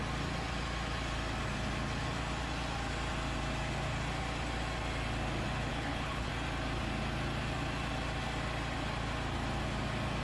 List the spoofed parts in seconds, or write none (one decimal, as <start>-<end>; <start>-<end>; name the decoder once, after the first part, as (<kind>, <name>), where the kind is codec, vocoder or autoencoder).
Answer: 5.7-6.3 (codec, HILCodec)